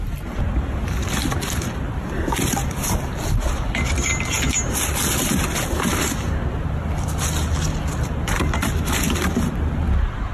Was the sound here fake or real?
real